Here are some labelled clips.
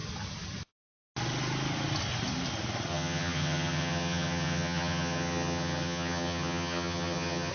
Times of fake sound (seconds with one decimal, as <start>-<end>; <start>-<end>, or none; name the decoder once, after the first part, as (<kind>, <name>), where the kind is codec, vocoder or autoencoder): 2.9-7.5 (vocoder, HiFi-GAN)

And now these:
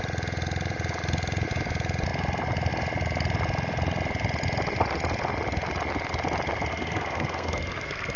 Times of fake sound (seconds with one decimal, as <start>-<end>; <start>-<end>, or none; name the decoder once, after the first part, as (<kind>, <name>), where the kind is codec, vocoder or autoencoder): 6.7-8.2 (codec, SNAC)

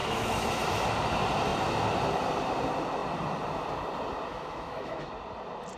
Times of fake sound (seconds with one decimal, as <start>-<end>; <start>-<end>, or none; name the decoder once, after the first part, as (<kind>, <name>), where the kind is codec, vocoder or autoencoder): 0.0-0.5 (autoencoder, DAC-VAE); 4.3-5.1

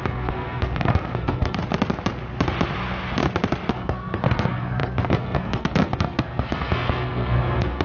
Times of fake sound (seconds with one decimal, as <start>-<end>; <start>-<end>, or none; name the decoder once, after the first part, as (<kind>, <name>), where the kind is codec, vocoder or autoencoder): 0.0-1.6 (codec, SNAC); 3.7-7.8

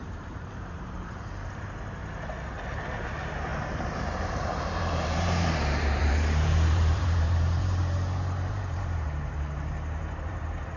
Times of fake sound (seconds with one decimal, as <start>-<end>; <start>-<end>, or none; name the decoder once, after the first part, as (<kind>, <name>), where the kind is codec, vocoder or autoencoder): 0.0-2.0 (vocoder, BigVGAN v2); 2.8-7.8; 8.5-10.8

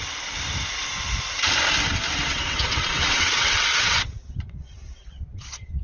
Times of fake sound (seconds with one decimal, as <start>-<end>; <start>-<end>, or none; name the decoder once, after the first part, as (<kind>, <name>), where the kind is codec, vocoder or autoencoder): 2.3-5.8 (vocoder, WaveNeXt)

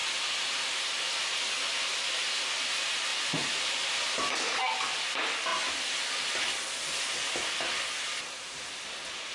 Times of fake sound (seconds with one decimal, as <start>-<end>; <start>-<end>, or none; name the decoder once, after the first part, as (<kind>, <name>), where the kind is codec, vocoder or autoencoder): none